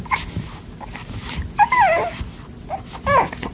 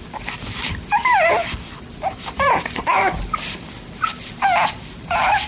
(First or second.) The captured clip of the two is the first